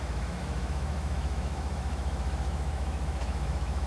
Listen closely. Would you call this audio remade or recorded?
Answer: remade